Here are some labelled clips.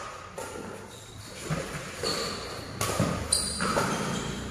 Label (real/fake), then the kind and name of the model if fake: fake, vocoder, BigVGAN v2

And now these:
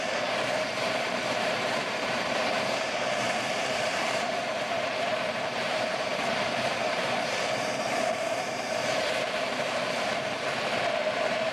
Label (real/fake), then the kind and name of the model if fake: fake, vocoder, BigVGAN v2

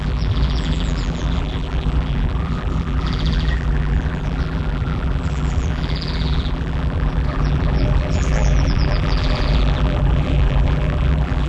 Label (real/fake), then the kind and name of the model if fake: fake, vocoder, BigVGAN v2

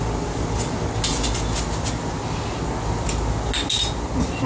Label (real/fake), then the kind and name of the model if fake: real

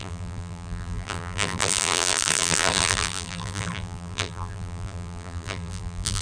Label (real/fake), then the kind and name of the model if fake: fake, vocoder, BigVGAN v2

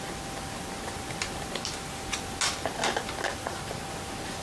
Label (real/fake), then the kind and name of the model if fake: real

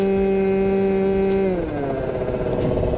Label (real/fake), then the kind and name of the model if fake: real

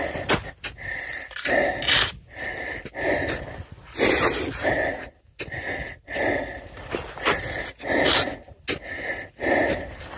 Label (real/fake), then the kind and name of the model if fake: real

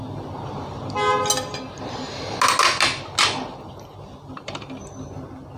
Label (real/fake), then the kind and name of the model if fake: real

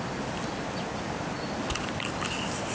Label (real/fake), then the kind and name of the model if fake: real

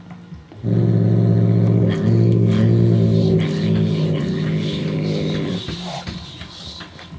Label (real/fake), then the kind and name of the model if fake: real